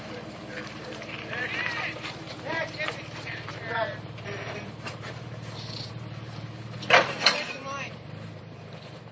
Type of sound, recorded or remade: remade